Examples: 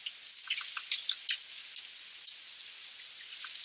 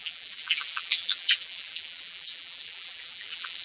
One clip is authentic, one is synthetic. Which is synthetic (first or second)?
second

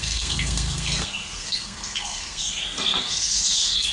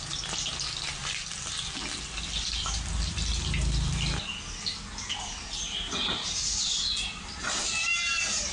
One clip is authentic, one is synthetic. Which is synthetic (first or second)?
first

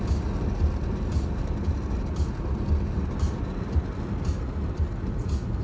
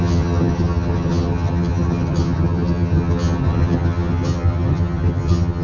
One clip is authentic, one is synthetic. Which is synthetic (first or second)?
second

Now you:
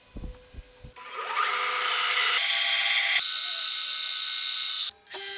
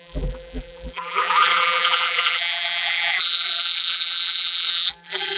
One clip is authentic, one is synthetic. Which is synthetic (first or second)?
second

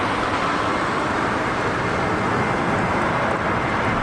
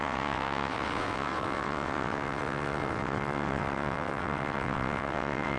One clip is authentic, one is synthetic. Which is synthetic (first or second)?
second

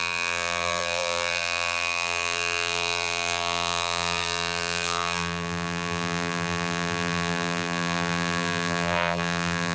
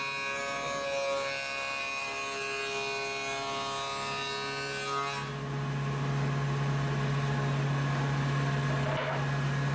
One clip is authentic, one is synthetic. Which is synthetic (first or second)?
first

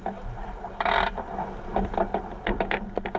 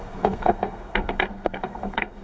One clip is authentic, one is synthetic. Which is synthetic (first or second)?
second